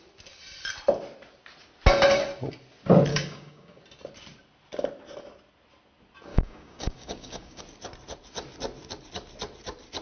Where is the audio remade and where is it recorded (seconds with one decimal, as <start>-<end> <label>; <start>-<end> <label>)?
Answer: 0.0-3.1 recorded; 3.1-3.8 remade; 3.8-6.3 recorded; 6.3-7.6 remade; 7.6-10.0 recorded